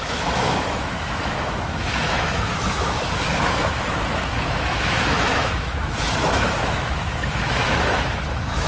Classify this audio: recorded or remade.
remade